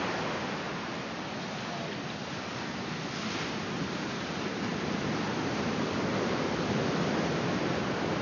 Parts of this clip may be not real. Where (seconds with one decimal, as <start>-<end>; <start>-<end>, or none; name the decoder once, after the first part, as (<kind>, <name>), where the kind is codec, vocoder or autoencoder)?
none